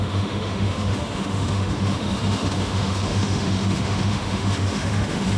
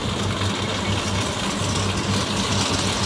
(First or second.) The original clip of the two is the second